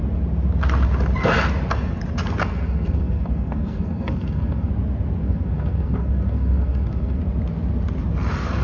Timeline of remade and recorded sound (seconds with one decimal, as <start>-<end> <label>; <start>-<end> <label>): 0.0-2.4 recorded; 2.4-4.7 remade; 4.7-5.2 recorded; 5.2-7.2 remade; 7.2-8.6 recorded